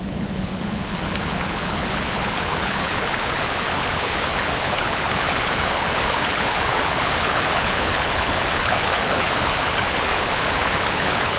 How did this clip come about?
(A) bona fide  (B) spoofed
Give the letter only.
B